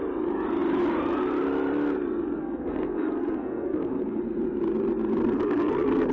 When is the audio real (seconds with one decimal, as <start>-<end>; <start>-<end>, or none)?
0.0-2.4; 4.2-5.2